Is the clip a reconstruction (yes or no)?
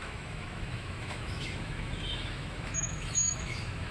yes